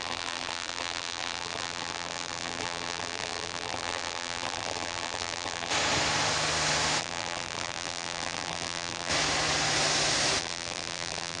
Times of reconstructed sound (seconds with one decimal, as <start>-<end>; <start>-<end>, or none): 0.0-5.7; 7.0-9.1; 10.4-11.4